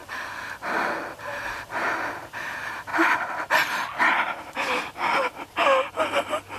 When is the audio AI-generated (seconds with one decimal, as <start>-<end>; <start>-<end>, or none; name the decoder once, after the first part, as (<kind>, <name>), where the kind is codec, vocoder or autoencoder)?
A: none